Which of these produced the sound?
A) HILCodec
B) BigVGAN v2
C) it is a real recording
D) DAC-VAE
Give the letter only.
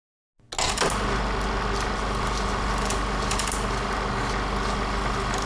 C